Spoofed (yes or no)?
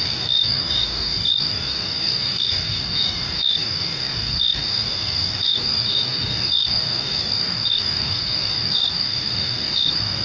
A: yes